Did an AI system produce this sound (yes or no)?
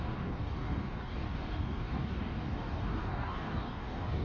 yes